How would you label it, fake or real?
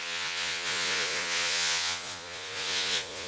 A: fake